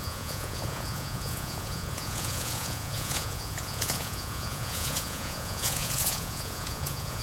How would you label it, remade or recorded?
remade